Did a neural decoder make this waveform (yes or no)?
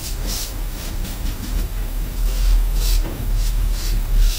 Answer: yes